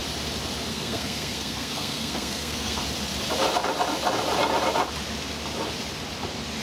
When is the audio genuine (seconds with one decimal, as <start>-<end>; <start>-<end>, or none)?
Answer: 0.0-0.7; 2.8-6.6